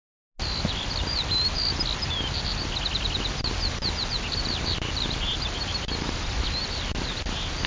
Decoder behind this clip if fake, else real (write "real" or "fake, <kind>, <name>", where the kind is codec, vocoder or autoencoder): real